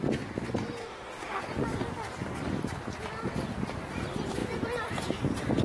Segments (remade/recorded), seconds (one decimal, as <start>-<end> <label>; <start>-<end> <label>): 0.0-0.8 recorded; 0.8-1.4 remade; 1.4-5.6 recorded